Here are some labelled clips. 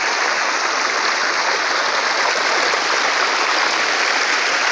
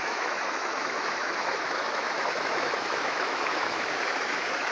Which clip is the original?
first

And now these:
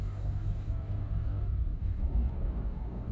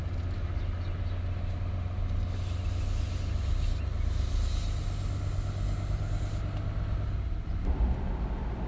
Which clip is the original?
second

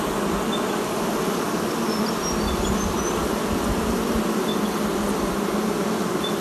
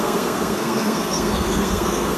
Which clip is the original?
first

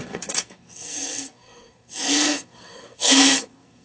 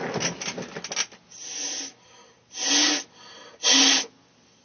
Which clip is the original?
second